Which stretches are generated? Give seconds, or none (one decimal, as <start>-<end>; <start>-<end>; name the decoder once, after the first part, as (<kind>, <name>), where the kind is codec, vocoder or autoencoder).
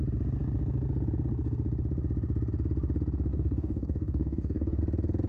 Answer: 3.3-4.8 (codec, DAC)